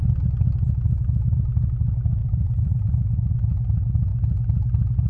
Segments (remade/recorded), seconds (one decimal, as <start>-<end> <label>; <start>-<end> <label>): 0.0-2.2 recorded; 2.2-2.8 remade; 2.8-5.1 recorded

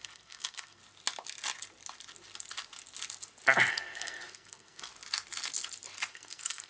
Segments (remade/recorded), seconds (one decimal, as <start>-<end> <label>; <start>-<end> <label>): 0.0-0.8 remade; 0.8-3.7 recorded; 3.7-4.9 remade; 4.9-6.1 recorded; 6.1-6.7 remade

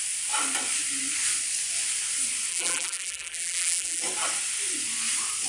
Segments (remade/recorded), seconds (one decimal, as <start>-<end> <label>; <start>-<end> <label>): 0.0-2.5 recorded; 2.5-4.0 remade; 4.0-5.5 recorded

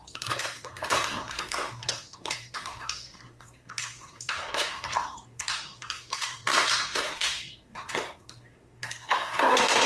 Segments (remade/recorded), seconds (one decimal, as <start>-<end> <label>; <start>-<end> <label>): 0.0-9.9 remade

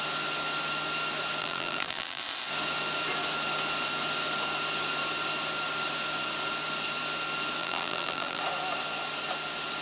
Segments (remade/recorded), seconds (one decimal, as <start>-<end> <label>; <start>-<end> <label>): 0.0-1.4 recorded; 1.4-2.2 remade; 2.2-7.6 recorded; 7.6-8.4 remade; 8.4-9.8 recorded

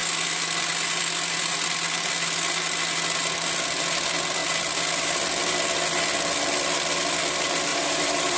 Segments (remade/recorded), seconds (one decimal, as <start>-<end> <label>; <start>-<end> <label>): 0.0-7.7 recorded; 7.7-8.4 remade

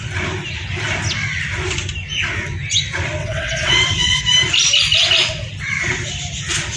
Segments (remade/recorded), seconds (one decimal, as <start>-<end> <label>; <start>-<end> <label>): 0.0-3.2 recorded; 3.2-4.2 remade; 4.2-6.8 recorded

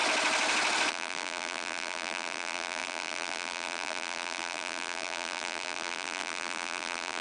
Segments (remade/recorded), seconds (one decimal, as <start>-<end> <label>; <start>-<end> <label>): 0.0-0.9 recorded; 0.9-7.2 remade